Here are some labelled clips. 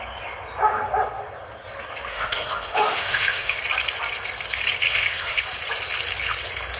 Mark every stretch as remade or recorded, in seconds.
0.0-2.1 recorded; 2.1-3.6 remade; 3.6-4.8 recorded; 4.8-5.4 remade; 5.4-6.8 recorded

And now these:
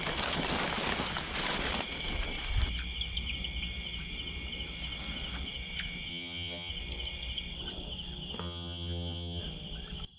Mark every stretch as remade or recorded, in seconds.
0.0-6.1 recorded; 6.1-6.7 remade; 6.7-8.4 recorded; 8.4-9.4 remade; 9.4-10.2 recorded

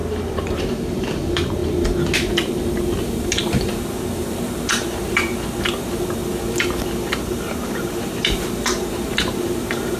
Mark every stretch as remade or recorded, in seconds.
0.0-1.6 remade; 1.6-3.4 recorded; 3.4-5.3 remade; 5.3-7.2 recorded; 7.2-10.0 remade

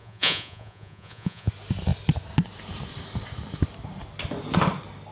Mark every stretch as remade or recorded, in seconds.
0.0-1.5 remade; 1.5-5.1 recorded